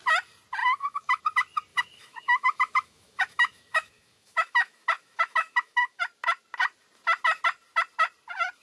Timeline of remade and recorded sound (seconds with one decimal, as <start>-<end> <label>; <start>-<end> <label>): 0.0-0.6 recorded; 0.6-1.2 remade; 1.2-1.7 recorded; 1.7-6.0 remade; 6.0-8.6 recorded